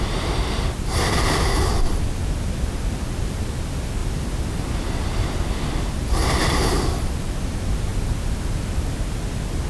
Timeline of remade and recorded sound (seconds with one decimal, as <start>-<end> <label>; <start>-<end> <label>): 0.0-2.2 recorded; 2.2-2.8 remade; 2.8-4.0 recorded; 4.0-6.9 remade; 6.9-9.7 recorded